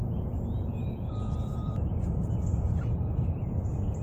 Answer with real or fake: fake